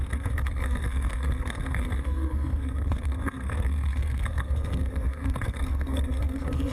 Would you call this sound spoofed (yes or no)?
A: yes